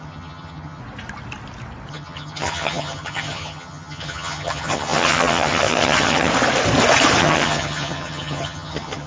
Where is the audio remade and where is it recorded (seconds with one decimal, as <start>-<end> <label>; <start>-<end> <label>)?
0.0-0.8 remade; 0.8-1.9 recorded; 1.9-6.3 remade; 6.3-7.2 recorded; 7.2-9.1 remade